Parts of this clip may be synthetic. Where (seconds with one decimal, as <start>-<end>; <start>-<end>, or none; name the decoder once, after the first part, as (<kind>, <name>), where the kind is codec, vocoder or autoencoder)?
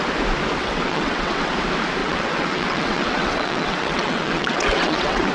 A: 0.6-1.5 (vocoder, WaveNeXt); 2.0-5.3